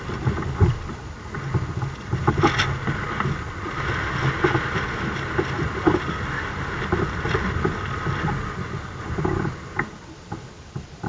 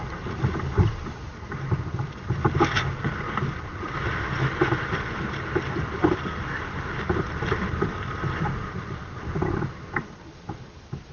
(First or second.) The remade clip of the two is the second